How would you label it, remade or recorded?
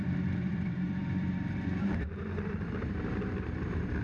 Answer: remade